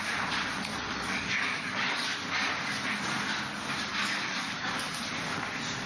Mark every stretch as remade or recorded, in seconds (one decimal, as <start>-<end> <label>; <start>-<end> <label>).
0.0-0.7 recorded; 0.7-2.5 remade; 2.5-3.9 recorded; 3.9-4.7 remade; 4.7-5.9 recorded

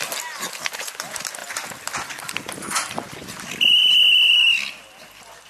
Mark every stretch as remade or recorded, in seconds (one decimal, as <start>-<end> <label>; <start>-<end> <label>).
0.0-5.5 recorded

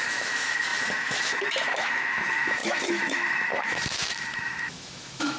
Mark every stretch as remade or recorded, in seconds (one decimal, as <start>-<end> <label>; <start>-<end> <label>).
0.0-5.4 remade

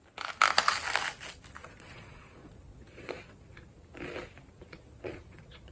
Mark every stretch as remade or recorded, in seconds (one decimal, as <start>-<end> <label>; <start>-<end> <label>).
0.0-1.6 recorded; 1.6-3.7 remade; 3.7-4.7 recorded; 4.7-5.7 remade

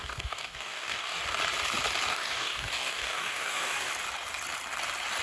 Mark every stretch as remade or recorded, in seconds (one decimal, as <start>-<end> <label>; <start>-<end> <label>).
0.0-1.2 remade; 1.2-2.1 recorded; 2.1-3.9 remade; 3.9-5.2 recorded